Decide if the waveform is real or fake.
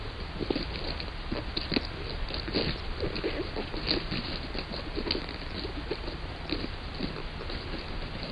real